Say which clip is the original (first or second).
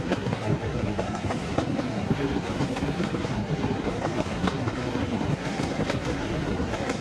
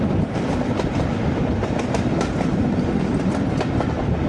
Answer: second